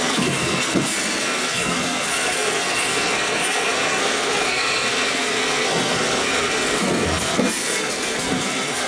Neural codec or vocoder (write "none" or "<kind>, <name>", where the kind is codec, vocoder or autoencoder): codec, SNAC